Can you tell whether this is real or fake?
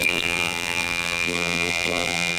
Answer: fake